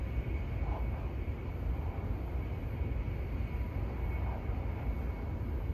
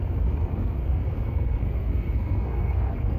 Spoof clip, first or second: second